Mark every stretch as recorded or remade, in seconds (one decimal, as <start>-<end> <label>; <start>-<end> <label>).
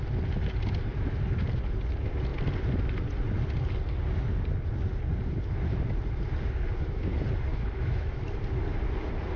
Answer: 0.0-7.5 recorded; 7.5-8.2 remade; 8.2-9.4 recorded